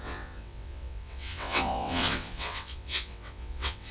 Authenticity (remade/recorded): remade